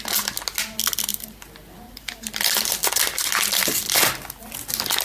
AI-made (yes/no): no